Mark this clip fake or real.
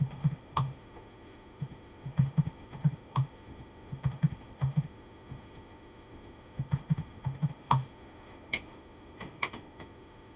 fake